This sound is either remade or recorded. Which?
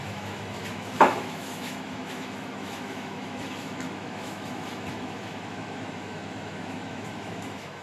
remade